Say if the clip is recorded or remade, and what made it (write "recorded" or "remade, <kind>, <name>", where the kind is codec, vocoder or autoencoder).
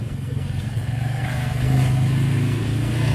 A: remade, codec, SNAC